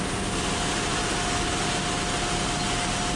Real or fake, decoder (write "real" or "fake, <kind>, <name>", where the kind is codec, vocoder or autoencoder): real